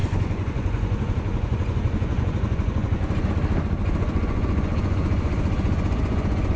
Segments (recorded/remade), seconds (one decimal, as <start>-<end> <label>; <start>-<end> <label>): 0.0-3.3 remade; 3.3-3.8 recorded; 3.8-6.6 remade